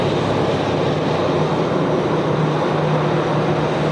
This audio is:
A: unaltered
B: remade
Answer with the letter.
A